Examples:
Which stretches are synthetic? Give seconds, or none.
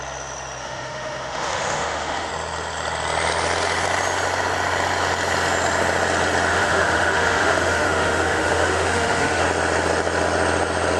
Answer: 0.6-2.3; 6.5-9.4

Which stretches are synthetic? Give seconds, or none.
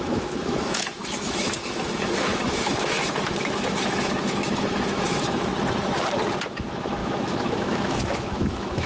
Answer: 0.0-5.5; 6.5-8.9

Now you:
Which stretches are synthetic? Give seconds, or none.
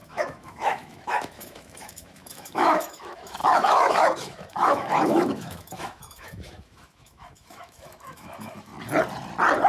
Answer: 0.0-8.7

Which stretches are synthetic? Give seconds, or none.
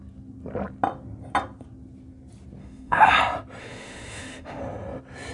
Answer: 2.6-3.1; 3.6-4.6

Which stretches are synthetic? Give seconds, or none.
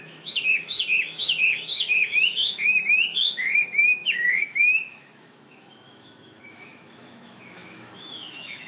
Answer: 0.0-8.7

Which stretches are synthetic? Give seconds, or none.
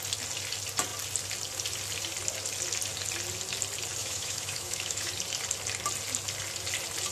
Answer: 4.0-5.1